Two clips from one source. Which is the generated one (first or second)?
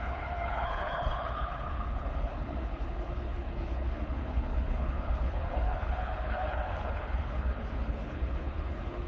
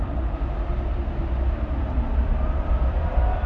first